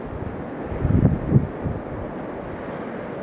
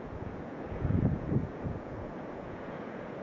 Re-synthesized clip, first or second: second